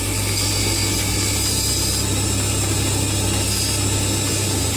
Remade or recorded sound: recorded